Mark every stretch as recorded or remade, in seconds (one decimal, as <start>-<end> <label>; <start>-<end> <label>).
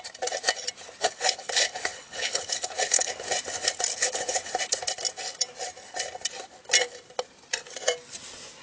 0.0-1.0 recorded; 1.0-3.1 remade; 3.1-3.9 recorded; 3.9-4.6 remade; 4.6-8.6 recorded